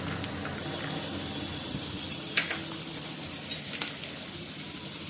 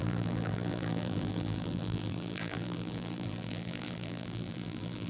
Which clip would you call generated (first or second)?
second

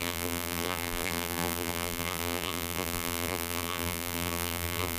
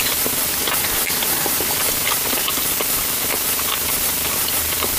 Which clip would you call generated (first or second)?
first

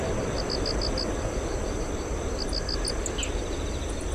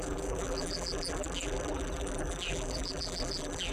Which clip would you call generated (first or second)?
second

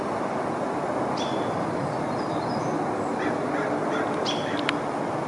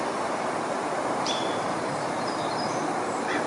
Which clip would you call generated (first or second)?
second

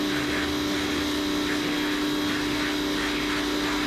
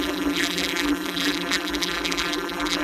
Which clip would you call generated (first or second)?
second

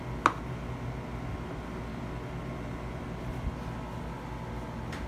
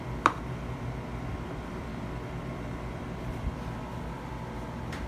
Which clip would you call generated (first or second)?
second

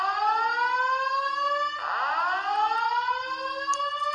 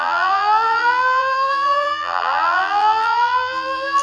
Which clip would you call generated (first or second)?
second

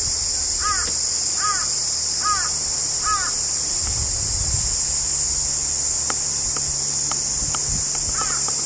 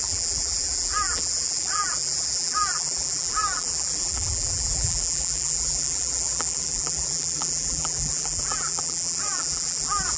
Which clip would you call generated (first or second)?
second